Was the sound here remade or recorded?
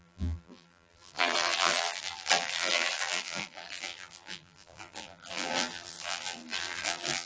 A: remade